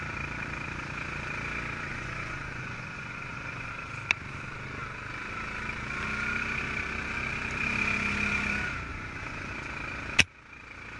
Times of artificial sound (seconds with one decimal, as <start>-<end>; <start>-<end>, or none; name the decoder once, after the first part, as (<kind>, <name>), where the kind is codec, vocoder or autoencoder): 1.9-3.7 (vocoder, Vocos); 8.9-9.5